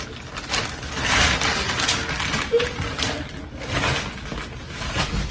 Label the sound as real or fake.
real